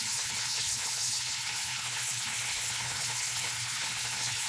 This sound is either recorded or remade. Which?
remade